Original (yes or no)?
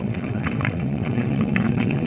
no